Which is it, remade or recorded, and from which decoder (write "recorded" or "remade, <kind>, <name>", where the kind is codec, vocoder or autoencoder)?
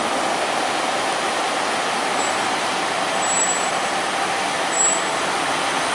recorded